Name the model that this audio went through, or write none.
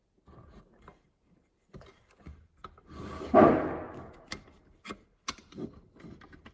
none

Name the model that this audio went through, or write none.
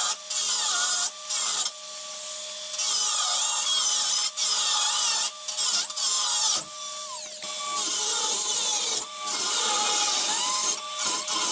none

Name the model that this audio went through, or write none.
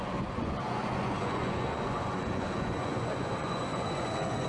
vocoder, Vocos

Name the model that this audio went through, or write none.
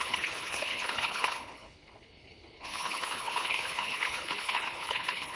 codec, HILCodec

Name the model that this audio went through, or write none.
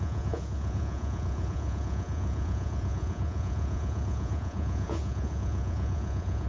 vocoder, Vocos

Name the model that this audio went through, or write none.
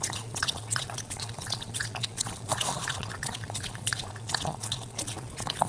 vocoder, Vocos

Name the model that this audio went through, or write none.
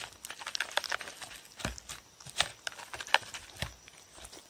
none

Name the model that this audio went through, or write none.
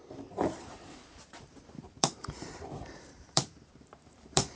vocoder, BigVGAN v2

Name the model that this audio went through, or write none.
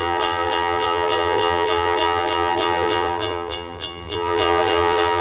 vocoder, BigVGAN v2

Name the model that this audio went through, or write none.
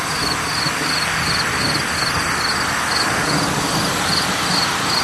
none